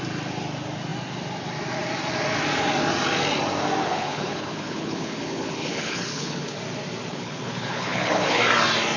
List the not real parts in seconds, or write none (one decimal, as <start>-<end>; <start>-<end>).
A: 3.8-6.6; 7.1-8.4